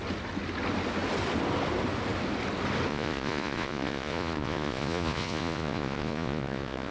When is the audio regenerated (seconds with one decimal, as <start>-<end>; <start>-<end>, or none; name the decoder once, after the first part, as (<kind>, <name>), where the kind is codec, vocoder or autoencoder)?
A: 2.9-6.9 (vocoder, Vocos)